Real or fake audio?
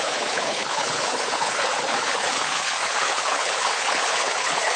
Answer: fake